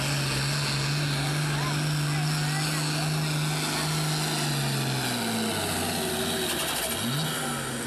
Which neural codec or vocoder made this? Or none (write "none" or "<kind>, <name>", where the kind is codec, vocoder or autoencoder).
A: none